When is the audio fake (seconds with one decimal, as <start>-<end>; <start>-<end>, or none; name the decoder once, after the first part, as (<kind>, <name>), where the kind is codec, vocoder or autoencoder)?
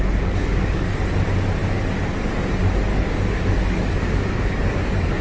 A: 0.4-1.0 (codec, DAC); 2.9-5.2